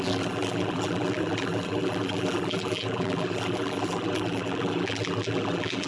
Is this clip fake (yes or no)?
yes